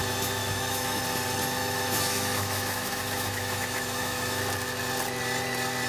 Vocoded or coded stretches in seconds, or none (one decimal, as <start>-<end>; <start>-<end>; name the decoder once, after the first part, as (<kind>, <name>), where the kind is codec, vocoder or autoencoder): 0.4-1.0 (autoencoder, DAC-VAE); 1.6-4.4